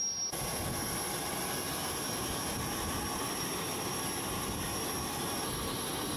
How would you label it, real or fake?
real